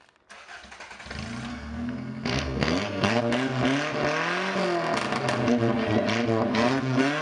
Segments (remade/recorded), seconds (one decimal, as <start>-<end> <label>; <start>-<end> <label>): 0.0-1.5 recorded; 1.5-3.2 remade; 3.2-6.5 recorded; 6.5-7.2 remade